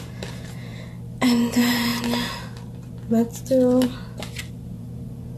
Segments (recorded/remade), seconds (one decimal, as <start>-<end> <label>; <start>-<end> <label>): 0.0-0.7 remade; 0.7-1.2 recorded; 1.2-1.9 remade; 1.9-4.5 recorded; 4.5-5.4 remade